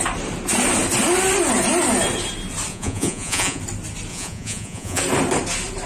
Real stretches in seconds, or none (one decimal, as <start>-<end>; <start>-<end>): 0.0-2.7; 3.6-4.1; 5.0-5.9